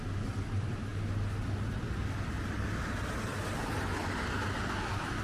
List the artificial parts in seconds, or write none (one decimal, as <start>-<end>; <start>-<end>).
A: none